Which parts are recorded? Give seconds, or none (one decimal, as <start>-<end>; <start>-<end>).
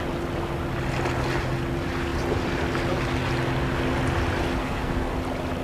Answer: 0.0-4.6; 5.1-5.6